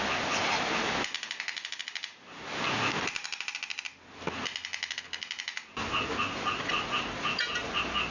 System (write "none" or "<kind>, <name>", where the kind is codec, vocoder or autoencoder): none